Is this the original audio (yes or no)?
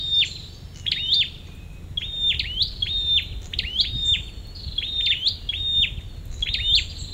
yes